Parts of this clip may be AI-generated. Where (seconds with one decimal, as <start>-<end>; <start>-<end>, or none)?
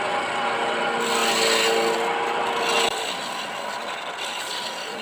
none